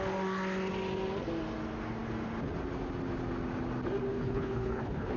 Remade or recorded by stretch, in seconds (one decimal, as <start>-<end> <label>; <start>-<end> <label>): 0.0-4.1 recorded; 4.1-5.2 remade